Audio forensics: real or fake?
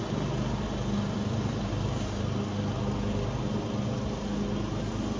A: real